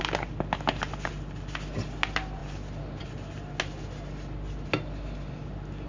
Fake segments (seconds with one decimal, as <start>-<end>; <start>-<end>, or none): none